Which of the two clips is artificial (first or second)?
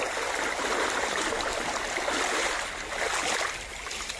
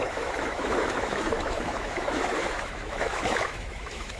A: second